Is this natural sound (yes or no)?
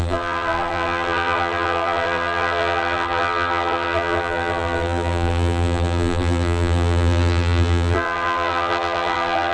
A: no